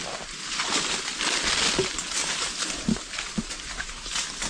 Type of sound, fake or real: real